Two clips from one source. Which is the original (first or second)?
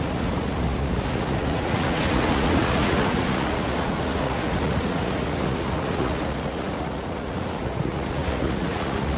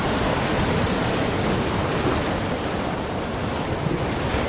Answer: second